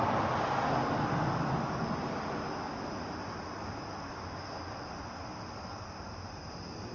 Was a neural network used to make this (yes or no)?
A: no